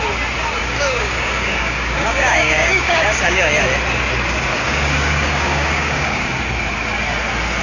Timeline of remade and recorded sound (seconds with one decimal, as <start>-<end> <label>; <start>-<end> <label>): 0.0-0.6 recorded; 0.6-3.6 remade; 3.6-4.5 recorded; 4.5-6.3 remade; 6.3-7.6 recorded